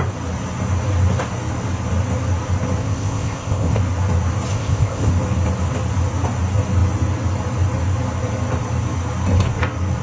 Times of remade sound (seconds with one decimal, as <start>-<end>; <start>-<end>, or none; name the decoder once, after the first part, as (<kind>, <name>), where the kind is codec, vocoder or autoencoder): 2.8-3.8 (codec, ZipCodec); 4.5-5.1